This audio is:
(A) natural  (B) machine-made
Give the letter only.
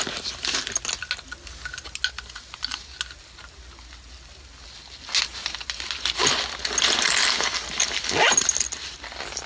A